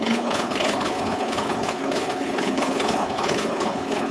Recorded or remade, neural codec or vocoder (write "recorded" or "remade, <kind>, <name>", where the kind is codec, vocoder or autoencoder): remade, codec, HILCodec